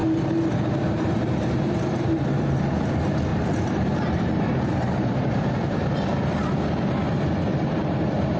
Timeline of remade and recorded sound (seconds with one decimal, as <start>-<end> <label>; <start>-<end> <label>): 0.0-2.8 remade; 2.8-3.3 recorded; 3.3-5.9 remade; 5.9-7.5 recorded; 7.5-8.4 remade